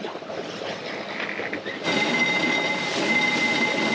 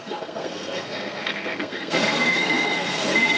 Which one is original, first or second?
first